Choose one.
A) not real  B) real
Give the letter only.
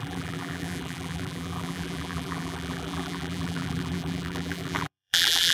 A